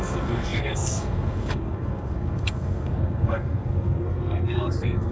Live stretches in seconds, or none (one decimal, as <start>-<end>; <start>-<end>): none